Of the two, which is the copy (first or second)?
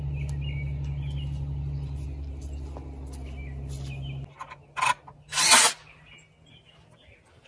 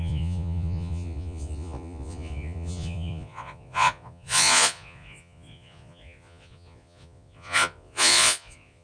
second